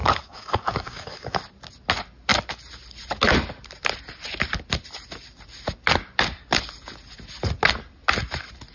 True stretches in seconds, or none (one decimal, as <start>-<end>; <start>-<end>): 1.4-8.7